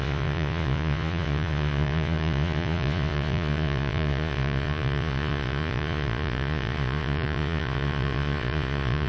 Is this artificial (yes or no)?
yes